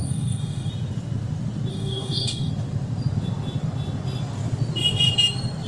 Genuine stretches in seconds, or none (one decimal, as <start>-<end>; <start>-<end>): 0.7-1.7; 2.5-5.7